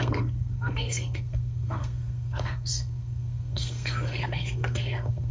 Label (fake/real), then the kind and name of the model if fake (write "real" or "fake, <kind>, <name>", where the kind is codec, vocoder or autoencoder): fake, codec, SNAC